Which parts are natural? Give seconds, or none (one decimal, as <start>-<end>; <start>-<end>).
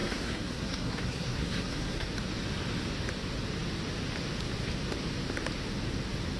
2.1-6.4